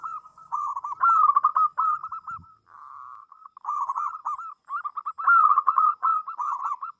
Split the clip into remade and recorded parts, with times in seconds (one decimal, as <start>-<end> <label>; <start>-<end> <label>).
0.0-0.7 remade; 0.7-3.6 recorded; 3.6-4.2 remade; 4.2-5.4 recorded; 5.4-7.0 remade

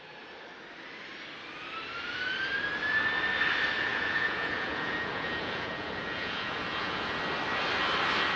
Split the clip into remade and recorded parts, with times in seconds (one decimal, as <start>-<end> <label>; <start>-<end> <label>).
0.0-3.9 recorded; 3.9-7.2 remade; 7.2-8.4 recorded

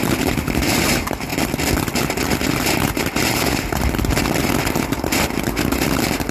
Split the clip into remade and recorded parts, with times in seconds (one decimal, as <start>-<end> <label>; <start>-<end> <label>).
0.0-6.3 recorded

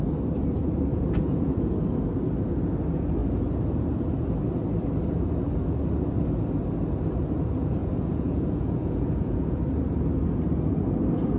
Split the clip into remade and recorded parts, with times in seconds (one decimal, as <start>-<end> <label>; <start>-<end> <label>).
0.0-0.9 recorded; 0.9-1.7 remade; 1.7-7.8 recorded; 7.8-9.6 remade; 9.6-11.4 recorded

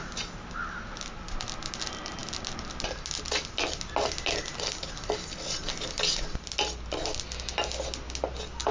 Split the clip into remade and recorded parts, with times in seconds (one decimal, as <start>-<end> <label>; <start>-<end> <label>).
0.0-8.7 recorded

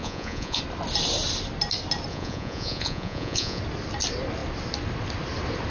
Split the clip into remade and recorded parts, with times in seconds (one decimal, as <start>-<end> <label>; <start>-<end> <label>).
0.0-0.6 remade; 0.6-2.1 recorded; 2.1-3.6 remade; 3.6-5.7 recorded

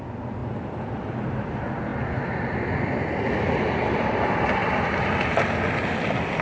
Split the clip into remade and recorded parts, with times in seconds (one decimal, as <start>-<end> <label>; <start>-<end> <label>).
0.0-6.4 recorded

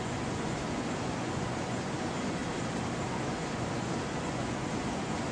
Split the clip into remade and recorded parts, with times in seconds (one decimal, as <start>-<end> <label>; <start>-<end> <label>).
0.0-2.4 remade; 2.4-3.1 recorded; 3.1-5.3 remade